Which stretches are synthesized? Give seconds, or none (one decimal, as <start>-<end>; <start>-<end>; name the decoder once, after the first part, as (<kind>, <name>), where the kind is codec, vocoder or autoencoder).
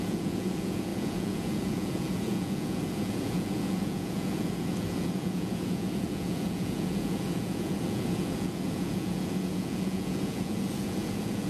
0.0-11.5 (vocoder, Vocos)